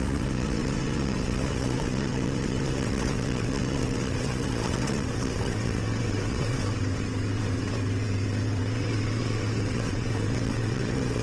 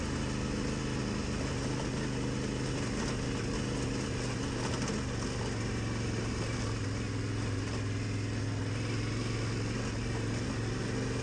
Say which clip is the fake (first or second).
first